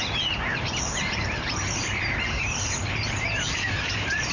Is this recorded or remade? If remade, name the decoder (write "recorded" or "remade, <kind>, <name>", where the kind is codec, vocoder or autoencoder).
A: remade, vocoder, BigVGAN v2